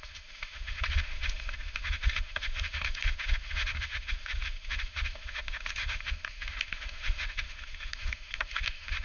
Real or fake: fake